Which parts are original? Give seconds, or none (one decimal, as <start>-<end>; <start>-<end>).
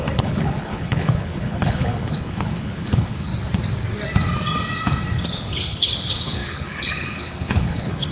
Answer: 3.3-5.3